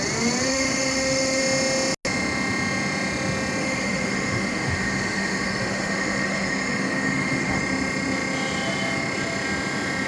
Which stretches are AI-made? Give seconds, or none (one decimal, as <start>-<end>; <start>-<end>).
0.5-1.4; 3.6-7.6